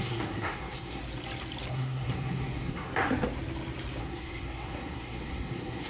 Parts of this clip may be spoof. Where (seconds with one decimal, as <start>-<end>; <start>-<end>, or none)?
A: 0.0-1.0; 1.7-2.9; 4.0-5.9